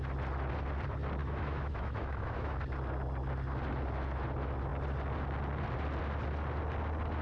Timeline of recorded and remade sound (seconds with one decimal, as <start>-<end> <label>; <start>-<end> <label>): 0.0-1.2 recorded; 1.2-2.6 remade; 2.6-7.2 recorded